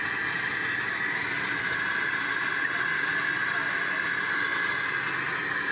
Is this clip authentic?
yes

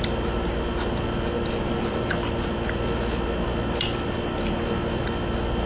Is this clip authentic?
yes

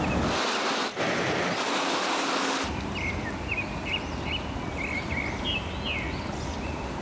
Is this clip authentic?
yes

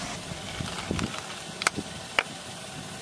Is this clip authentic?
no